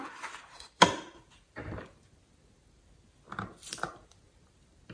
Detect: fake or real fake